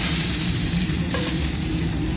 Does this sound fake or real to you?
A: fake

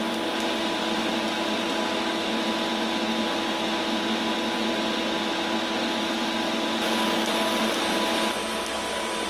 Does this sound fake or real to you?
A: real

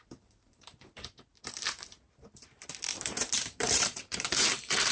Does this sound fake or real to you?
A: fake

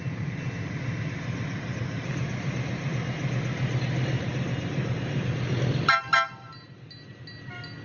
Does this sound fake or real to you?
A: real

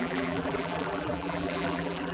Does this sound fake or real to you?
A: fake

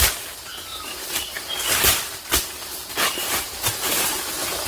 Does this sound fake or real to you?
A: real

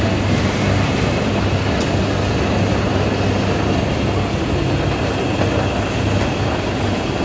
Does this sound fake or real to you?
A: real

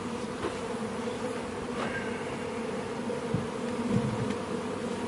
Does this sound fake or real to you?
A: fake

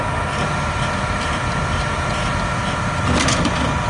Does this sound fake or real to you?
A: fake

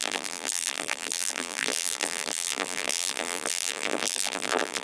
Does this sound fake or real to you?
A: fake